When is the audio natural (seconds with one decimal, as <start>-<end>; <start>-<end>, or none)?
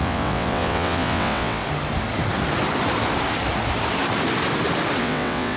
1.6-5.0